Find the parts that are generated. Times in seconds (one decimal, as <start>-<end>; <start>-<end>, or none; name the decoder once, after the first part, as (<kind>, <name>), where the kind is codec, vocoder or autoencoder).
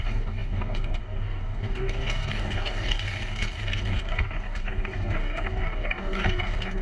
0.0-6.8 (codec, DAC)